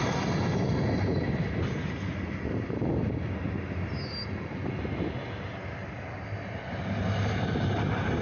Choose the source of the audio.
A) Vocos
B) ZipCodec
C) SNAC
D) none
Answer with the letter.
D